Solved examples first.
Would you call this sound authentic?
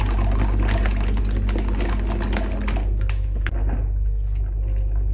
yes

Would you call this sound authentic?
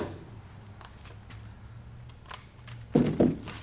yes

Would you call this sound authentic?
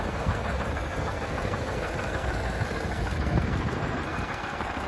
no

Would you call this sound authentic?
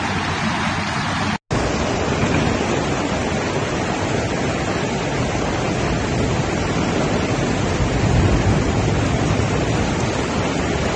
yes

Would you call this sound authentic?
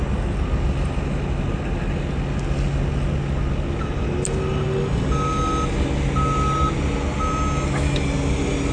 yes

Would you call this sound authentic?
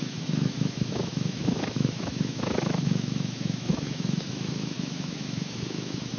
no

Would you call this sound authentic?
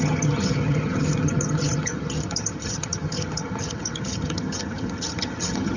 no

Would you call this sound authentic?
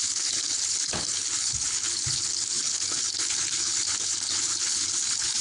no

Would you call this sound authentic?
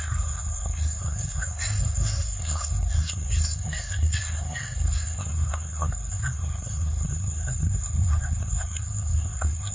no